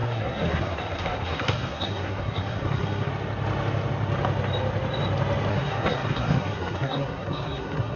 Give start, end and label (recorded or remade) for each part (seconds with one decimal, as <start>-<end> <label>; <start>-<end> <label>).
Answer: 0.0-3.1 remade; 3.1-5.5 recorded; 5.5-8.0 remade